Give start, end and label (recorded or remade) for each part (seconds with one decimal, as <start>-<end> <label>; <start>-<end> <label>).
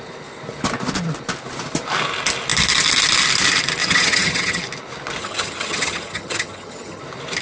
0.0-3.8 recorded; 3.8-4.6 remade; 4.6-5.2 recorded; 5.2-7.0 remade; 7.0-7.4 recorded